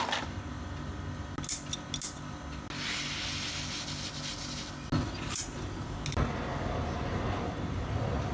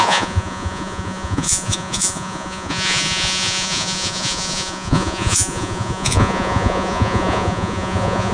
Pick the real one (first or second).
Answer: first